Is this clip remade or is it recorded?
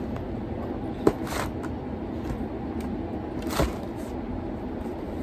recorded